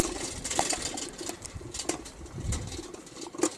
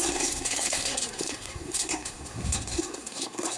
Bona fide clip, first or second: first